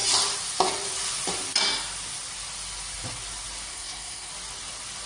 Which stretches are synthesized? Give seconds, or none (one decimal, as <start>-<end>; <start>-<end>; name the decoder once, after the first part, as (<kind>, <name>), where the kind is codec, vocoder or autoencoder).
3.7-4.3 (codec, SNAC)